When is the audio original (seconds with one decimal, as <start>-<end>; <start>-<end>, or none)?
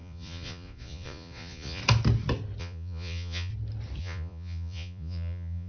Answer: 1.8-2.6; 3.5-4.0